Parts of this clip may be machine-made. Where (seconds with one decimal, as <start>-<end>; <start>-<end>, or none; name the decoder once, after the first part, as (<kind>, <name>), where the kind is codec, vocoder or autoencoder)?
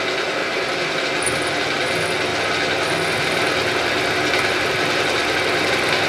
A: 0.4-1.0 (vocoder, BigVGAN v2)